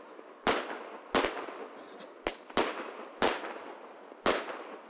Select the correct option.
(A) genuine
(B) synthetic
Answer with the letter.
A